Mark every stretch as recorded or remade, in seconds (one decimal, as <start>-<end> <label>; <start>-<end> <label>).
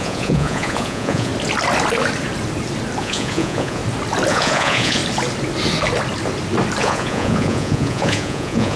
0.0-1.3 remade; 1.3-3.0 recorded; 3.0-3.8 remade; 3.8-4.3 recorded; 4.3-5.0 remade; 5.0-6.8 recorded; 6.8-8.8 remade